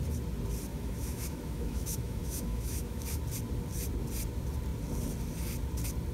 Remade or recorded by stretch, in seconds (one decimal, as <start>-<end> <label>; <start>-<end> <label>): 0.0-0.7 recorded; 0.7-3.2 remade; 3.2-6.1 recorded